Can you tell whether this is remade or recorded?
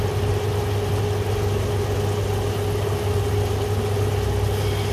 recorded